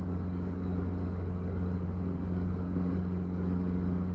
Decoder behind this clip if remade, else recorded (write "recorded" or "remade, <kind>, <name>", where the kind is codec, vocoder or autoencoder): remade, codec, DAC